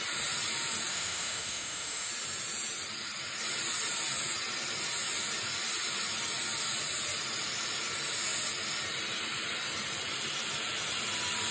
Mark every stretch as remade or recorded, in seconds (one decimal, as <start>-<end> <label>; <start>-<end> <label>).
0.0-0.9 recorded; 0.9-2.1 remade; 2.1-11.5 recorded

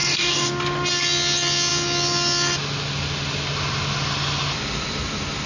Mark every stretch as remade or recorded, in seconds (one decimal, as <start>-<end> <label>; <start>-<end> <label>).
0.0-0.5 remade; 0.5-5.5 recorded

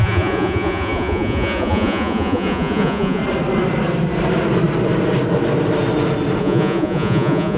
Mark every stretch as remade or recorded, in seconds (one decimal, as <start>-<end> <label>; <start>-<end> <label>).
0.0-3.2 remade; 3.2-6.4 recorded; 6.4-7.6 remade

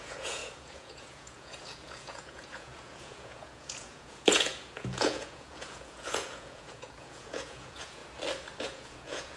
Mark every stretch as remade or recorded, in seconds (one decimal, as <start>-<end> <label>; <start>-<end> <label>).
0.0-8.0 remade; 8.0-8.6 recorded; 8.6-9.4 remade

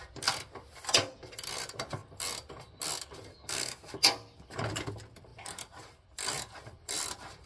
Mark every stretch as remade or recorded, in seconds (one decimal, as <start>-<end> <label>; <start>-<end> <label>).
0.0-3.3 recorded; 3.3-3.9 remade; 3.9-7.5 recorded

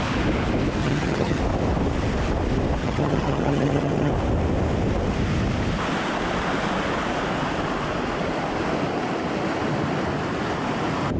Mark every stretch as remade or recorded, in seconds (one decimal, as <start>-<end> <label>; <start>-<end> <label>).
0.0-0.8 recorded; 0.8-1.4 remade; 1.4-2.8 recorded; 2.8-4.1 remade; 4.1-11.2 recorded